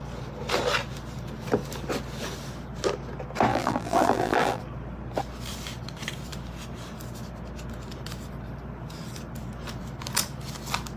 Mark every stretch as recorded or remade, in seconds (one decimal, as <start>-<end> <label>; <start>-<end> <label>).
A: 0.0-3.5 recorded; 3.5-4.6 remade; 4.6-11.0 recorded